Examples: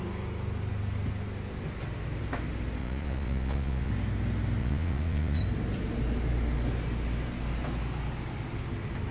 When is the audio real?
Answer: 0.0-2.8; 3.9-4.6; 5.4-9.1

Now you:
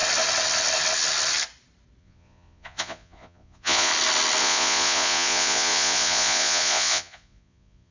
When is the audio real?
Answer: 0.0-2.0; 3.9-4.4

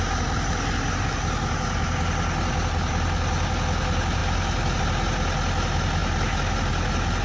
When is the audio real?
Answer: 0.0-7.2

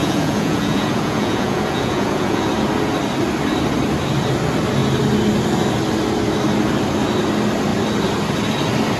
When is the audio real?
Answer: 2.5-9.0

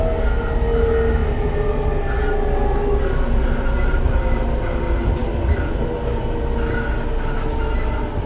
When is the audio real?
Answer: 0.0-8.3

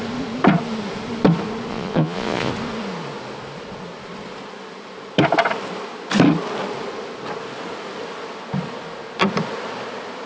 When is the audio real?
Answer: 0.0-1.7; 2.5-10.3